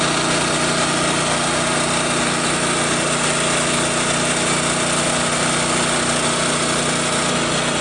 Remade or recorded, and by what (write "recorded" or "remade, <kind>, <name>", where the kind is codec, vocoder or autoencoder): recorded